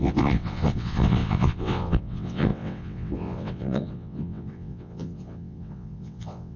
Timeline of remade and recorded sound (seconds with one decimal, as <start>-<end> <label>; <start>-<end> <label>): 0.0-6.6 remade